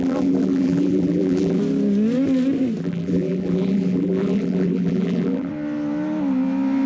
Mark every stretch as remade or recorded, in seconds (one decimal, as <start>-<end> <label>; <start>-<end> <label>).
0.0-1.6 remade; 1.6-2.8 recorded; 2.8-5.5 remade; 5.5-6.9 recorded